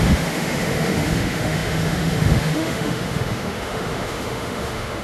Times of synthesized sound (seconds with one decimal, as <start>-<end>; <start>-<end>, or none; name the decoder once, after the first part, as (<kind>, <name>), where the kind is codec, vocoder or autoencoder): 0.0-5.0 (autoencoder, DAC-VAE)